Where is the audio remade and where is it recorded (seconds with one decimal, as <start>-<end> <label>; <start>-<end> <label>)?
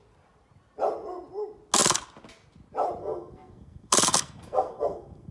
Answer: 0.0-3.0 recorded; 3.0-5.3 remade